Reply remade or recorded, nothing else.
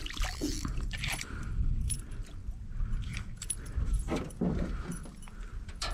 remade